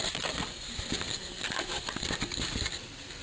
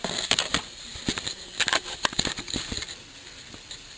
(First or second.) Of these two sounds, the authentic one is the second